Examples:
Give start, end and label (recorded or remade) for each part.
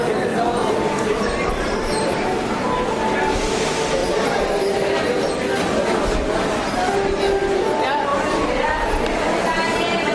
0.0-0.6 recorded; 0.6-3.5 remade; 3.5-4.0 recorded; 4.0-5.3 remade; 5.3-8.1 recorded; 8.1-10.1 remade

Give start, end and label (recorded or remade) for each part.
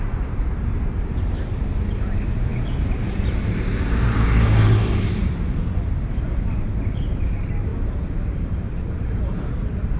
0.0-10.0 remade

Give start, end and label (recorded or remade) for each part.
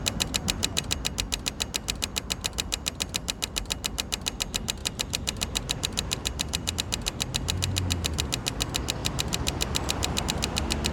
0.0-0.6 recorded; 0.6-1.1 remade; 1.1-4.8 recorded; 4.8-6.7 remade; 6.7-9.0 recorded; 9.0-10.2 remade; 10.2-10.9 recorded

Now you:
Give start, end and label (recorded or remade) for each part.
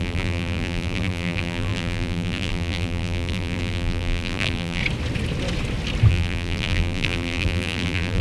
0.0-4.8 remade; 4.8-6.1 recorded; 6.1-8.2 remade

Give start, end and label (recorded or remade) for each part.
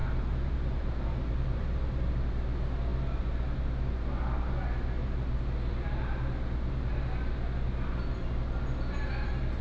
0.0-2.1 remade; 2.1-9.6 recorded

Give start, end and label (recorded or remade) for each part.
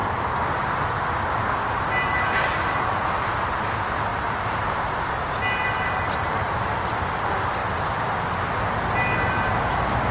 0.0-4.1 recorded; 4.1-4.9 remade; 4.9-10.1 recorded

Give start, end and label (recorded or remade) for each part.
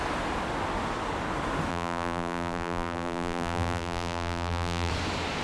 0.0-1.7 recorded; 1.7-4.9 remade; 4.9-5.4 recorded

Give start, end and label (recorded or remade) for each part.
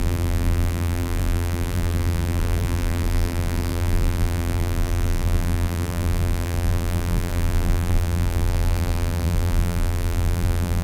0.0-10.8 remade